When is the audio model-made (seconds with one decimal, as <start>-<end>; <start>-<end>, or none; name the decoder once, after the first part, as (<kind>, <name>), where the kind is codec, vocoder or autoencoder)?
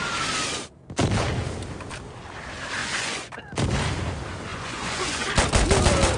2.8-3.3 (vocoder, Vocos); 4.5-5.3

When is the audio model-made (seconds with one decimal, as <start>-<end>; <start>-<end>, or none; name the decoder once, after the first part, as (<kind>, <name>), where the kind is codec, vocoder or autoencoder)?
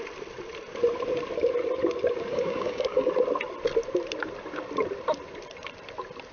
2.3-3.1 (codec, DAC)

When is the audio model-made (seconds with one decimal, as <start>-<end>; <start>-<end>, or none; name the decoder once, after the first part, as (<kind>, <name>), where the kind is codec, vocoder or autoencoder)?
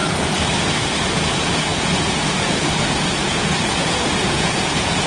1.1-5.1 (vocoder, Vocos)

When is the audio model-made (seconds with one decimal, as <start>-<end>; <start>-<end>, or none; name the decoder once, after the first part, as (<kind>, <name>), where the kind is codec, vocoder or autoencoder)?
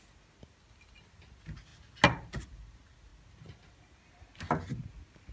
none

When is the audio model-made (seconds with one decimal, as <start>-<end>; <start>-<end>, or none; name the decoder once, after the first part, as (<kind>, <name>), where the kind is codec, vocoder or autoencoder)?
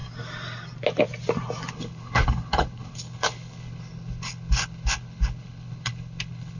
1.7-6.6 (codec, HILCodec)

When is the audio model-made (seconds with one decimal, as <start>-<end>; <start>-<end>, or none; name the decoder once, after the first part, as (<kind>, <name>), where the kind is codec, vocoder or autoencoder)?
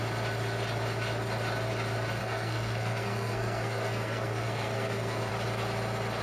2.2-5.3 (codec, SNAC)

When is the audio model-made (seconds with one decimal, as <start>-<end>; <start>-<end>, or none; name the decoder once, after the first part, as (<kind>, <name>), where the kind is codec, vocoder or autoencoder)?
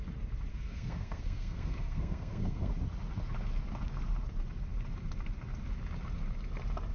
0.5-2.7 (codec, SNAC)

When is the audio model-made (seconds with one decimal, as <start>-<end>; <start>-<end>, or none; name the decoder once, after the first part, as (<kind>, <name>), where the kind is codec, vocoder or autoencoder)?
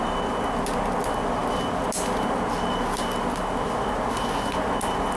none